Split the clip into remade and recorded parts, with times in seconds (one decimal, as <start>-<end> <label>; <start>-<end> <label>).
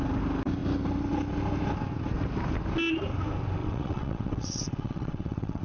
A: 0.0-3.6 recorded; 3.6-5.6 remade